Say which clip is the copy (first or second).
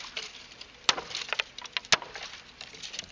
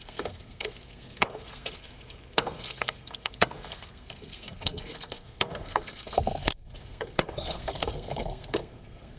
second